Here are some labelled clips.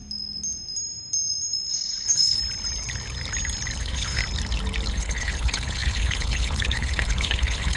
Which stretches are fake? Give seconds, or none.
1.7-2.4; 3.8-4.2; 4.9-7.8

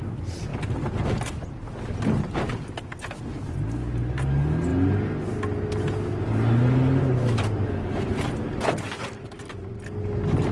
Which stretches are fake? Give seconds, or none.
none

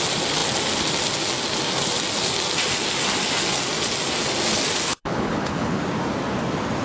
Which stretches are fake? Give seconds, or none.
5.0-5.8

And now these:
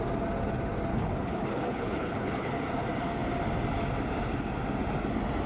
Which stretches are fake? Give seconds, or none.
0.9-2.5

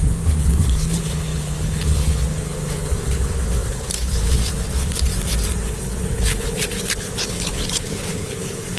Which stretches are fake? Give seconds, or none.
0.0-5.1; 5.7-8.8

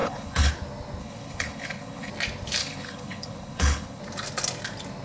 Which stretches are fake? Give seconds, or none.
0.0-0.5; 1.0-2.1; 2.6-4.0